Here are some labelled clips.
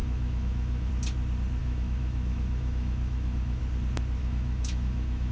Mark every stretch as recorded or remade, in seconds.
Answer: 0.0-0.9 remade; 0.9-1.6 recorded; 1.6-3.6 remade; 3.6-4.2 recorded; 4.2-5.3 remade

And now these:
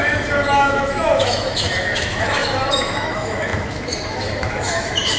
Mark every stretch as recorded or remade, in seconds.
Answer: 0.0-5.2 remade

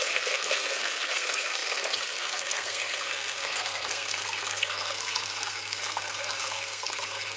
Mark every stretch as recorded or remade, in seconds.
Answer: 0.0-7.4 remade

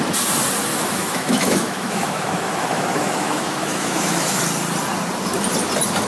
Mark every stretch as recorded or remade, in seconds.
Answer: 0.0-0.7 recorded; 0.7-4.4 remade; 4.4-6.1 recorded